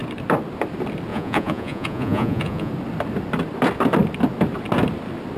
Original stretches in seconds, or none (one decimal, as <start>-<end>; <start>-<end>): 0.0-1.1; 2.7-5.4